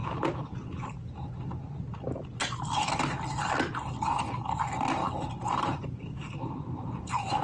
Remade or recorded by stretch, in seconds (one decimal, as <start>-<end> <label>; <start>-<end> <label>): 0.0-4.4 recorded; 4.4-5.0 remade; 5.0-5.6 recorded; 5.6-7.4 remade